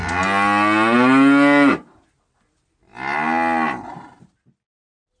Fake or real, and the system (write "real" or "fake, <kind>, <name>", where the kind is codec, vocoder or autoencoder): real